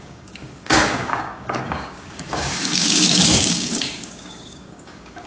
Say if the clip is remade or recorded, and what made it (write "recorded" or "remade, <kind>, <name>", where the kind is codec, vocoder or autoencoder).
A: remade, codec, DAC